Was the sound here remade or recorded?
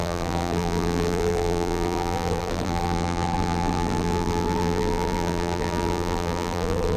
remade